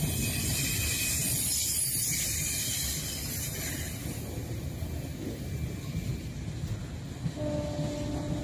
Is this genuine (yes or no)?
yes